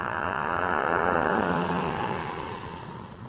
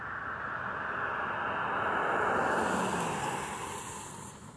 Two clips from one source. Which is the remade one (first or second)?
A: first